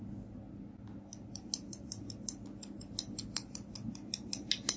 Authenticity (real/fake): real